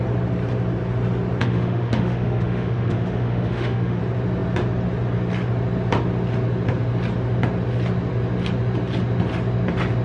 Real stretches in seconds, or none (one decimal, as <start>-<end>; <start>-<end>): 0.0-1.4; 4.0-10.0